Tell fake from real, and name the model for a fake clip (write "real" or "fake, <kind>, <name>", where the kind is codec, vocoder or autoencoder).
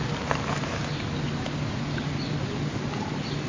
real